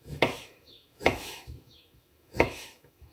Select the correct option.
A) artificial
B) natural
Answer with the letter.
A